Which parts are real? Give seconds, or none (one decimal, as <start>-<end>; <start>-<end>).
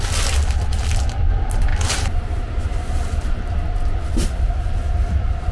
0.0-5.5